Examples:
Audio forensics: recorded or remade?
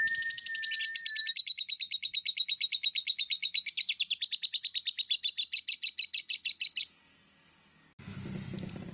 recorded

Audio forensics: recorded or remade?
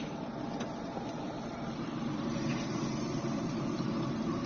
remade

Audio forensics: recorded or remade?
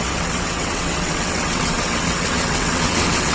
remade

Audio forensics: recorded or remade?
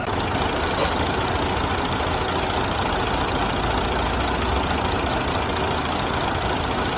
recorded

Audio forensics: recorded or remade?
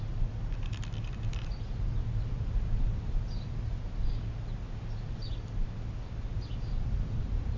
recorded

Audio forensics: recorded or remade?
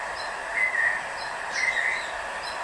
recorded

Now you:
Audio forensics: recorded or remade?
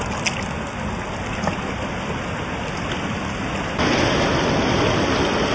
recorded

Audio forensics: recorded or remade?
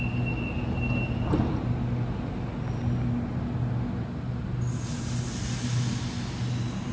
recorded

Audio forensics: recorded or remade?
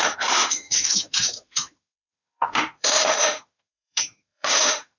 remade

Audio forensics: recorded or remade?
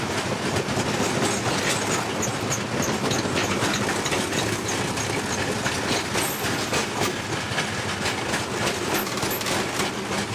recorded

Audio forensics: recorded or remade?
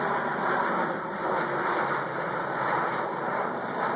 remade